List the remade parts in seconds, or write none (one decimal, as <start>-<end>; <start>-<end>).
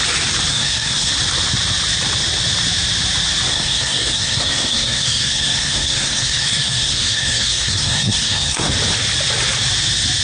0.5-1.1; 3.5-8.7